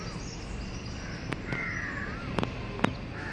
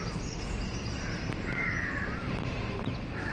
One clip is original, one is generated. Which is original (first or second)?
first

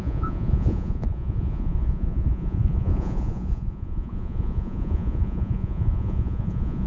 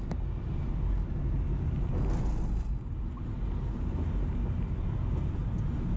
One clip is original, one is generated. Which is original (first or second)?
second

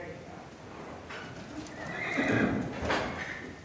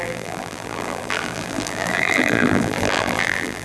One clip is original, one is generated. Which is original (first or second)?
first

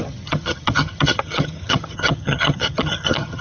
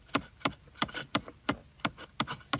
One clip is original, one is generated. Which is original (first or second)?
second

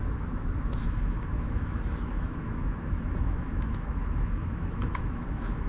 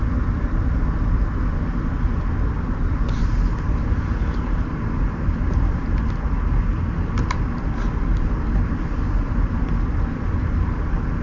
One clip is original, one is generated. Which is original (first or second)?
second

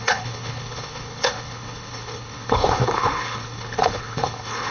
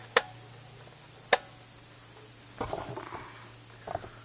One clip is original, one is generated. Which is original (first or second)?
second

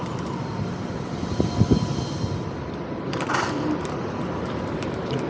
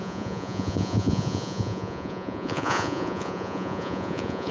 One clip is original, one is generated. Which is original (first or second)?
first